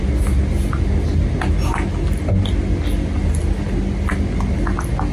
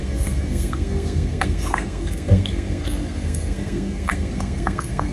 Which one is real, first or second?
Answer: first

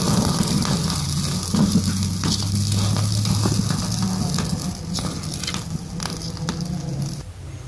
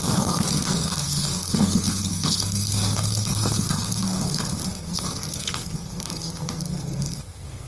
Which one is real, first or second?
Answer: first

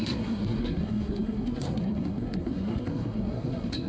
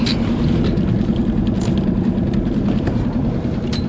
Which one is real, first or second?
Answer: second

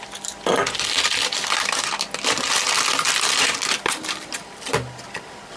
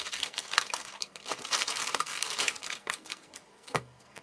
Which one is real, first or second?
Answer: first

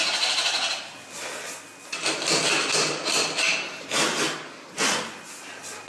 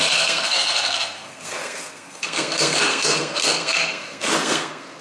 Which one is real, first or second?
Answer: first